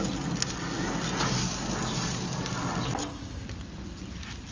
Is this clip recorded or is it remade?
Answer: recorded